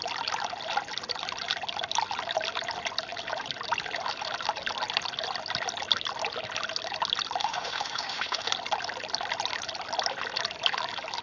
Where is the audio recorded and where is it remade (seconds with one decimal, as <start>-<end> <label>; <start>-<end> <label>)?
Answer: 0.0-7.4 recorded; 7.4-8.5 remade; 8.5-11.2 recorded